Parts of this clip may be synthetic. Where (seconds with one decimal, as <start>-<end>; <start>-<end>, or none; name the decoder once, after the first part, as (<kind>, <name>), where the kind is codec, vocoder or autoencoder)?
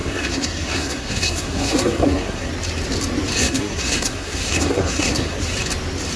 0.0-2.5 (codec, SNAC); 3.4-5.4